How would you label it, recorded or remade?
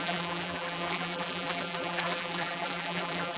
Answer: remade